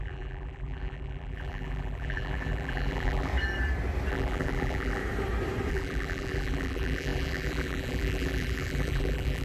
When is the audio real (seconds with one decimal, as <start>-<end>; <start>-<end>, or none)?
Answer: 3.3-4.1; 5.0-5.7